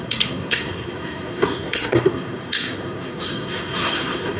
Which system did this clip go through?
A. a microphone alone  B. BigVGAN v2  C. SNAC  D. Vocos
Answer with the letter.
C